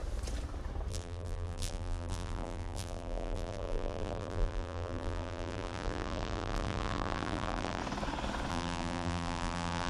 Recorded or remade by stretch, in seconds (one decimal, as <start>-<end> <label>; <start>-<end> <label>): 0.0-0.9 recorded; 0.9-7.8 remade; 7.8-8.5 recorded; 8.5-9.9 remade